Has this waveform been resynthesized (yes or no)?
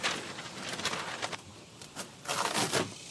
yes